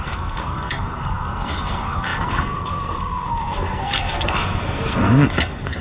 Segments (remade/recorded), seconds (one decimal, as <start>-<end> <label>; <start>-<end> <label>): 0.0-5.8 remade